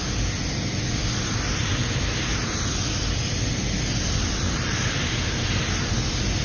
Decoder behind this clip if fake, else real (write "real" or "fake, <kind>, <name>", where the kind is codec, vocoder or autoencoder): fake, vocoder, BigVGAN v2